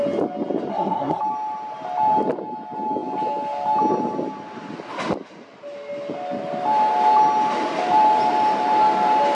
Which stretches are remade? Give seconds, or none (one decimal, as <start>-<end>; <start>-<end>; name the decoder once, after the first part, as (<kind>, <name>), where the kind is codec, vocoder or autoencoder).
0.7-1.2 (codec, SNAC)